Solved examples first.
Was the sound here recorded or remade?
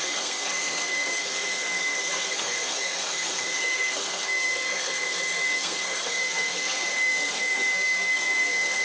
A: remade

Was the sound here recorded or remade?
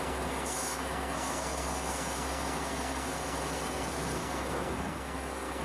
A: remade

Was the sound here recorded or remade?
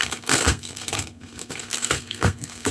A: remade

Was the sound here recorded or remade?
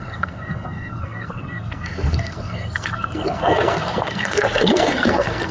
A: remade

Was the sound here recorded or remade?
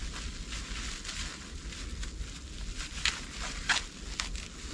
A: recorded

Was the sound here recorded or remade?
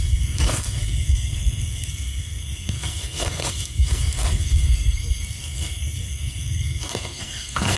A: remade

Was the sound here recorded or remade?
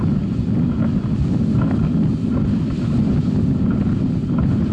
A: recorded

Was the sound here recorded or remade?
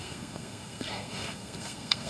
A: remade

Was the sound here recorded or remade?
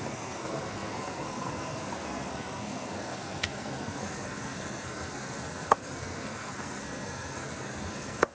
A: remade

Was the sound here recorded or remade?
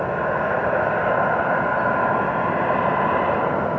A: recorded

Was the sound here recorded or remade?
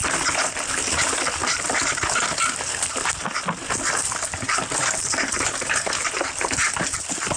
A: recorded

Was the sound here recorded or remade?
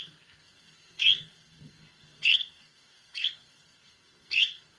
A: remade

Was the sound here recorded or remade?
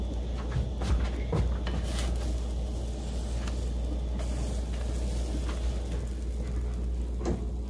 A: recorded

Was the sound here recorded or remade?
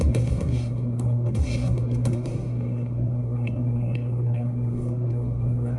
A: remade